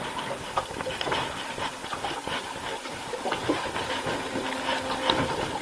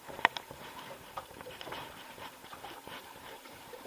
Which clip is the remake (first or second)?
second